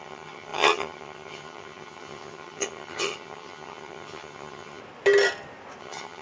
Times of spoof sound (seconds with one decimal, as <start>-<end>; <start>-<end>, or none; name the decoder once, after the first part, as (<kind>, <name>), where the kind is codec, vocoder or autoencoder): 0.0-4.8 (vocoder, HiFi-GAN); 5.8-6.2